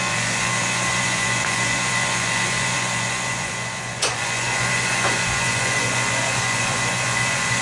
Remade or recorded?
remade